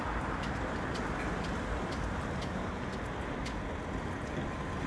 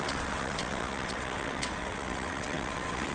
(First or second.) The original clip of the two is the first